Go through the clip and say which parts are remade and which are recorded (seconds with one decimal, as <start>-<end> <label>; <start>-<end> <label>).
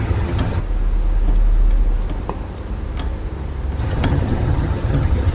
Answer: 0.0-0.6 remade; 0.6-3.8 recorded; 3.8-5.3 remade